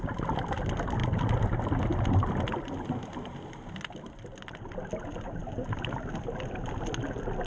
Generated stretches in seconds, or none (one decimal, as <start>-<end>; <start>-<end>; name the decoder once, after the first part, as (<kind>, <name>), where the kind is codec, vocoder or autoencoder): none